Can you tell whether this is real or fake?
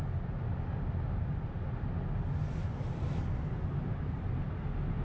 real